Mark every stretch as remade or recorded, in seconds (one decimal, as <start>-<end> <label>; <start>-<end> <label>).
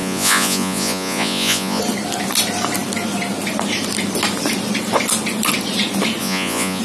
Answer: 0.0-1.8 remade; 1.8-6.2 recorded; 6.2-6.8 remade